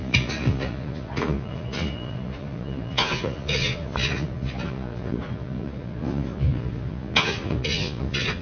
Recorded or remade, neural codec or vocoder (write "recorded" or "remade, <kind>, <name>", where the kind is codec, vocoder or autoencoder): remade, vocoder, Vocos